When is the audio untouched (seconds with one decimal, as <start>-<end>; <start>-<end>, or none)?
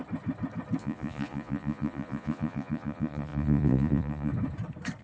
0.0-0.8; 4.3-5.0